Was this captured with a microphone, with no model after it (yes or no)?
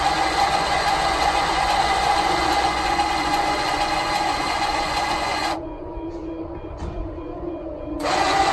no